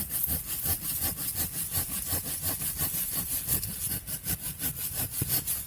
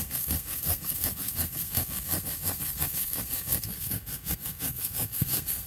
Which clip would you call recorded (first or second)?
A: first